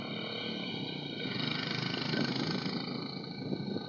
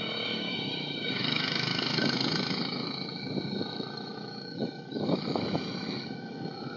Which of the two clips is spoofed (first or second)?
second